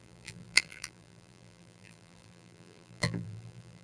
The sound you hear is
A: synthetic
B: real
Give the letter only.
A